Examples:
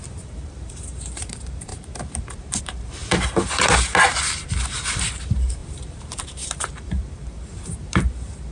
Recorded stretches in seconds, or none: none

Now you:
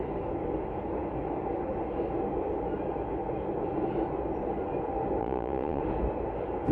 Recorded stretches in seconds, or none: 0.0-5.2; 5.8-6.7

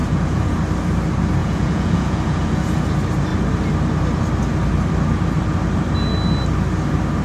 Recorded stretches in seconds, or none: 0.6-1.4; 2.9-7.2

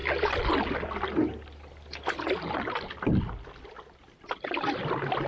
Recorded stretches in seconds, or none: 0.0-3.2